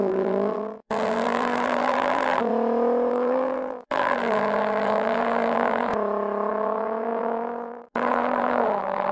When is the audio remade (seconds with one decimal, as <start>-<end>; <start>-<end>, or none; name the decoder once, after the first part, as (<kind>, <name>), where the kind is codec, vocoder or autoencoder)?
0.0-2.5 (vocoder, BigVGAN v2); 3.1-5.9; 6.5-9.1